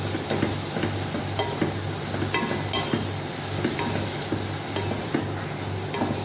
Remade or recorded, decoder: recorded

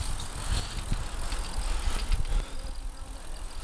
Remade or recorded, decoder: recorded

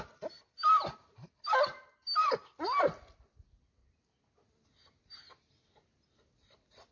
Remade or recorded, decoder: recorded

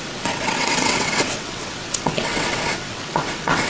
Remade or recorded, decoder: remade, vocoder, WaveNeXt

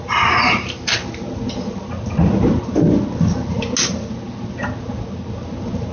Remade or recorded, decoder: recorded